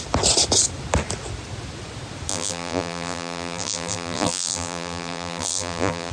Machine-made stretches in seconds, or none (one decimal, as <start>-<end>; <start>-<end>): 2.3-6.1